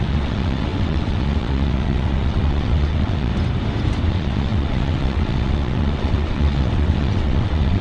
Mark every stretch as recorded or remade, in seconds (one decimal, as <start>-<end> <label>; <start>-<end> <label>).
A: 0.0-3.3 remade; 3.3-4.1 recorded; 4.1-7.8 remade